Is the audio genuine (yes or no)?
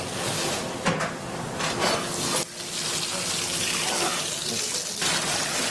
yes